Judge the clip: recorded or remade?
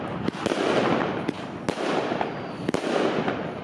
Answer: recorded